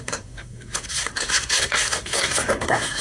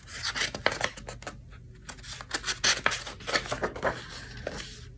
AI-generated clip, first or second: first